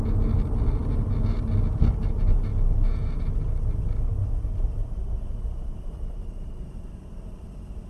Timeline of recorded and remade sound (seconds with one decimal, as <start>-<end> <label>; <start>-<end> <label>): 0.0-4.8 recorded; 4.8-7.2 remade; 7.2-7.9 recorded